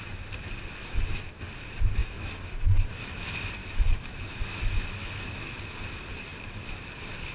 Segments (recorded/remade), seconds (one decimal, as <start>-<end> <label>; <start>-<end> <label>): 0.0-0.8 recorded; 0.8-1.4 remade; 1.4-2.0 recorded; 2.0-3.2 remade; 3.2-3.6 recorded; 3.6-5.5 remade; 5.5-7.3 recorded